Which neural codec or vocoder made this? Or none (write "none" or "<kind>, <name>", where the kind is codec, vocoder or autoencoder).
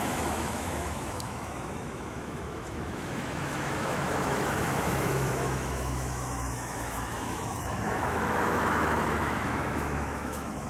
autoencoder, DAC-VAE